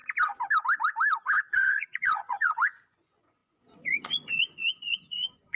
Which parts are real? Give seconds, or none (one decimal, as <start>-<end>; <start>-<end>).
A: 0.0-1.5